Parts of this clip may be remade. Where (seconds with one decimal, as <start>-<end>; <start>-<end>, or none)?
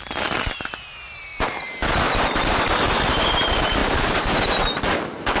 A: none